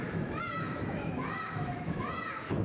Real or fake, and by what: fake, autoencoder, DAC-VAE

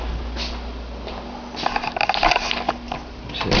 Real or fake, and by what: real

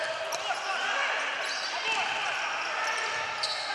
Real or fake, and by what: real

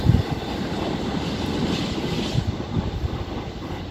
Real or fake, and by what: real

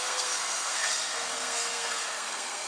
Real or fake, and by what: fake, codec, SNAC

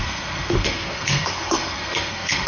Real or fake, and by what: fake, codec, SNAC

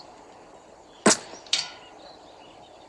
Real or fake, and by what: real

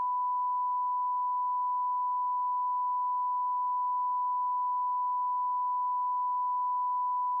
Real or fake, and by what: real